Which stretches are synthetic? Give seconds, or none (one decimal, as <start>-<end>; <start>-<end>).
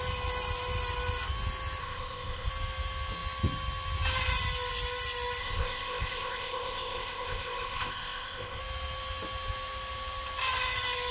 1.8-2.5; 5.4-8.6